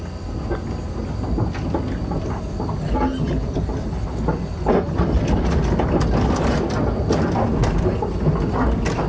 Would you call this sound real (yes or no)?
yes